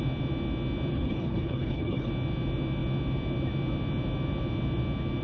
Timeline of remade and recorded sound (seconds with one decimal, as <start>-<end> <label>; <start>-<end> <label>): 0.0-0.9 recorded; 0.9-2.1 remade; 2.1-5.2 recorded